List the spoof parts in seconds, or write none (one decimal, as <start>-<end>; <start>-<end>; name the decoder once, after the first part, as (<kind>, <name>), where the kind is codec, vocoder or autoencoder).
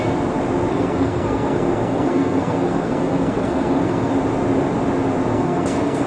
0.7-4.1 (codec, SNAC); 5.3-6.1